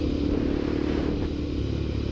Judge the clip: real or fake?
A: real